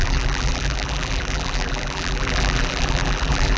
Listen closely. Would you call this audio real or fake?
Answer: fake